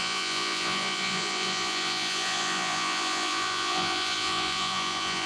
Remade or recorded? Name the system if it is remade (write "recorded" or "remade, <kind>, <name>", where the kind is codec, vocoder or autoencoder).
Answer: remade, vocoder, Vocos